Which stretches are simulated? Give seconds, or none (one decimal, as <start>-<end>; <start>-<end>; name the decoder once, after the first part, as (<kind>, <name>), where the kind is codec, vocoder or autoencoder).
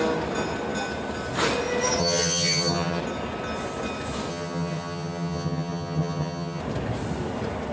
2.0-3.0 (vocoder, HiFi-GAN); 4.3-6.6